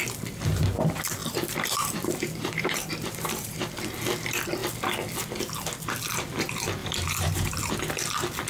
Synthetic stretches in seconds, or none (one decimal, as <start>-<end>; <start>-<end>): 1.2-3.7; 6.8-7.5